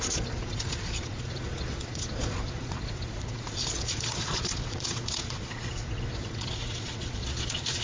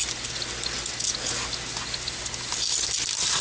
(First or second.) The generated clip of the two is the first